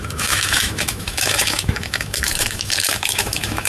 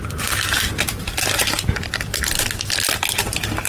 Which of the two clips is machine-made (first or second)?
first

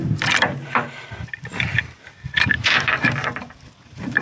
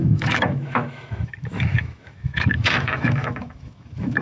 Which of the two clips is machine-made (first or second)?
second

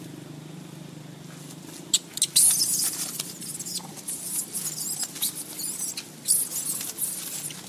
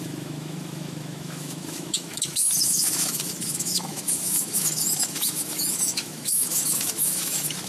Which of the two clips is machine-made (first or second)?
second